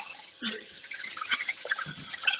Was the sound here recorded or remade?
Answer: remade